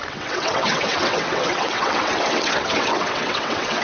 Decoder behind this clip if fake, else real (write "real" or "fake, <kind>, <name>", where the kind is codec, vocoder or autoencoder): fake, vocoder, WaveNeXt